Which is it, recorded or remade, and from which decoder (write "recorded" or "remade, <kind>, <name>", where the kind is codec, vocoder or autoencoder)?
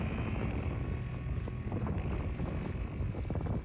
recorded